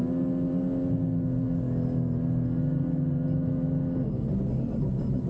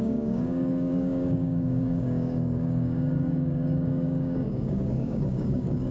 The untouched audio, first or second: first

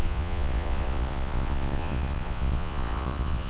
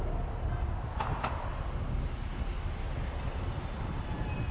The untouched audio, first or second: second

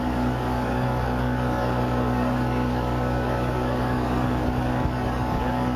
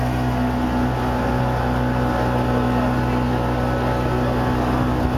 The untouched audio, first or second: second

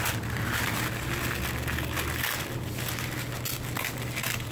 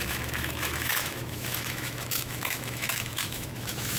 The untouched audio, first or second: first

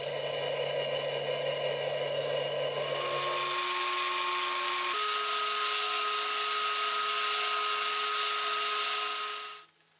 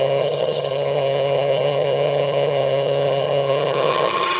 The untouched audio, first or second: first